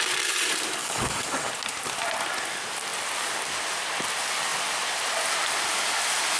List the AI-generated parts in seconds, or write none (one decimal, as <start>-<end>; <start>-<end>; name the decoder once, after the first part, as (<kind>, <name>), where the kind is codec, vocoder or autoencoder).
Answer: 0.8-1.5 (codec, DAC)

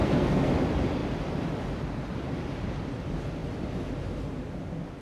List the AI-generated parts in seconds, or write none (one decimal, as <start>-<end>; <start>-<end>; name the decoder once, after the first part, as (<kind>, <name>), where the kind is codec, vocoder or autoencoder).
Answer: 0.0-0.5 (codec, SNAC)